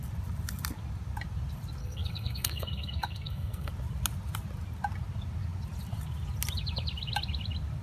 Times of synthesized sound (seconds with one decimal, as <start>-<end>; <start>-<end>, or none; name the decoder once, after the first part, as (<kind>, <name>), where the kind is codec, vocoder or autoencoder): 1.8-3.7 (codec, SNAC)